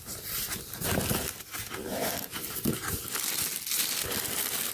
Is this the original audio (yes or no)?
yes